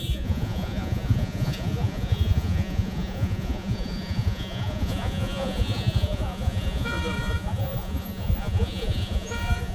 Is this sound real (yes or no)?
no